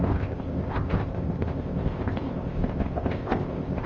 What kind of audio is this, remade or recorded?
remade